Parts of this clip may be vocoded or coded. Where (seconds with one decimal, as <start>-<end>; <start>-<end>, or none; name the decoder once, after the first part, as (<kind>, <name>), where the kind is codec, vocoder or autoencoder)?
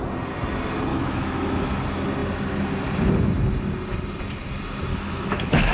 0.9-1.7 (autoencoder, DAC-VAE); 4.9-5.7